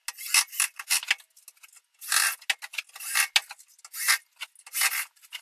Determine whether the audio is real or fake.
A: real